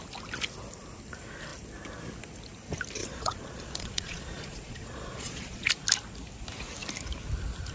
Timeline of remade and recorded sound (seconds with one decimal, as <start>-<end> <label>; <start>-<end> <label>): 0.0-3.0 recorded; 3.0-5.7 remade; 5.7-7.7 recorded